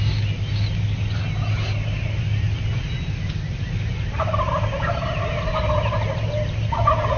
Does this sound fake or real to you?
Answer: real